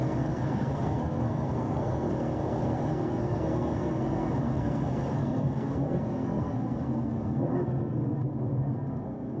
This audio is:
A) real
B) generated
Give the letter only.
B